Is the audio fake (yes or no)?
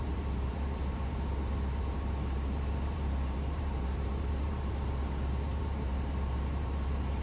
yes